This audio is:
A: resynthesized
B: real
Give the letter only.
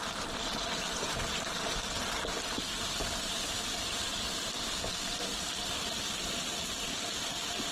B